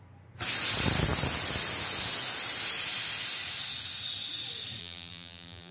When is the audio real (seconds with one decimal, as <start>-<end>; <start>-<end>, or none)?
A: 0.0-4.8